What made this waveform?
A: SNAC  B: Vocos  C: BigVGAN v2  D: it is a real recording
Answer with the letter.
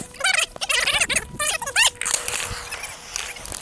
D